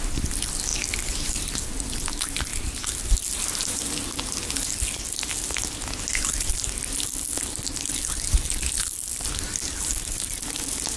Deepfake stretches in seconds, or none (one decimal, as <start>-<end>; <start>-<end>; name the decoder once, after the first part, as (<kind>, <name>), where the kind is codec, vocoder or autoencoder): none